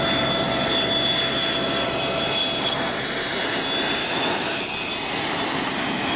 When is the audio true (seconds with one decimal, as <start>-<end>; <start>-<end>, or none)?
0.0-4.0; 4.6-6.2